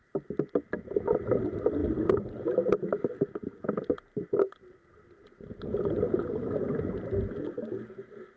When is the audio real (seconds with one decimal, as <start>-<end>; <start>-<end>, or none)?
0.0-8.4